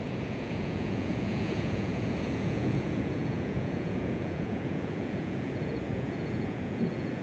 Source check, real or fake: fake